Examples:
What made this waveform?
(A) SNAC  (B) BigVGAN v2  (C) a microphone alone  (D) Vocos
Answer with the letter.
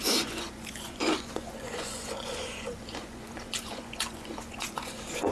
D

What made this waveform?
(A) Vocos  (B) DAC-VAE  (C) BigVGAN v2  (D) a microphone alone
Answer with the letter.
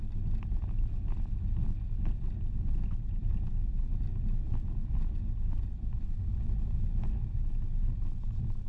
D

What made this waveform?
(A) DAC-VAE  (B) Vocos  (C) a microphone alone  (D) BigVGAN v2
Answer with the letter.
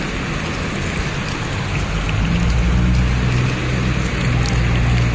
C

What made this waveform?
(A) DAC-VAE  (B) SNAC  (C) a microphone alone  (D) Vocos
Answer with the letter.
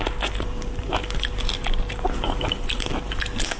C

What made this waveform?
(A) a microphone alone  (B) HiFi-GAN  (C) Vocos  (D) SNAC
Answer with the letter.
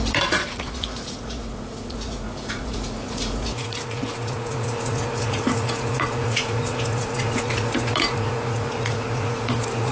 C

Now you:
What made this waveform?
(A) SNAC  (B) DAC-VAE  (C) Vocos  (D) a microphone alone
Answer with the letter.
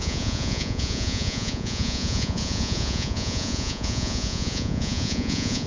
C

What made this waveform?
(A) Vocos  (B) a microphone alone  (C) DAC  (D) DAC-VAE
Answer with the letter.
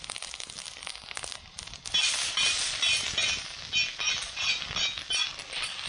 B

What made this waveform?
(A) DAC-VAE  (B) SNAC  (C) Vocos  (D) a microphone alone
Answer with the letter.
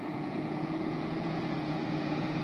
C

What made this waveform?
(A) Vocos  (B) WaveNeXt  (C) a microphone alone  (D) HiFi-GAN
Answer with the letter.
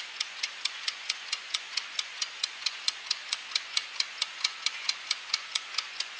A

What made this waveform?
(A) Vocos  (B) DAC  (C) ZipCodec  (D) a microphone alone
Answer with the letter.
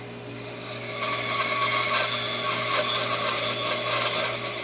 D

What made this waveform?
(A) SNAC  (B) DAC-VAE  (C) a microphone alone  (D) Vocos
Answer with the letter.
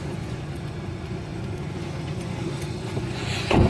D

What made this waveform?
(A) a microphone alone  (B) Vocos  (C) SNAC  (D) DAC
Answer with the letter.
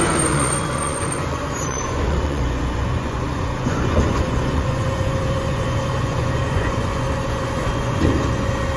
B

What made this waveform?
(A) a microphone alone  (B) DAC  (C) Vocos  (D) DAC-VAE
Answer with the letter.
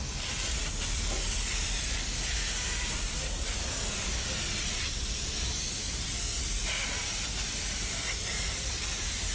A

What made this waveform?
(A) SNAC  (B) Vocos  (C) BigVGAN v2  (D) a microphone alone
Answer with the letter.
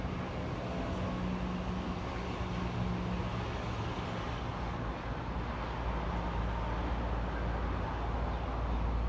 D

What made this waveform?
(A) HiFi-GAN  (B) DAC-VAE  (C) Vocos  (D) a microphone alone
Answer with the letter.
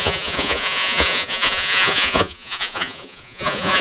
C